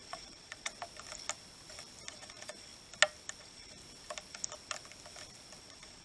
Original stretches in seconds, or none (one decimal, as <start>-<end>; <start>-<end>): 0.7-2.1; 2.7-3.4; 3.8-5.6